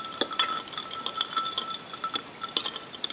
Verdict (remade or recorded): recorded